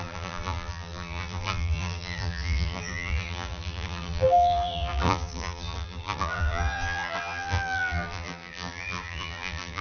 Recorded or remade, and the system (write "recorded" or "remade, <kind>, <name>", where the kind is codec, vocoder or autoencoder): remade, vocoder, BigVGAN v2